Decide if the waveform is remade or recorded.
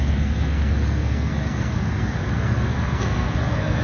remade